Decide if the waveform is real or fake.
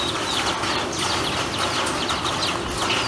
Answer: real